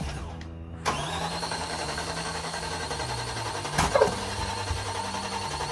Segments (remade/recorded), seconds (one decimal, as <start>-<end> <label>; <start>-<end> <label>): 0.0-1.4 recorded; 1.4-2.7 remade; 2.7-5.7 recorded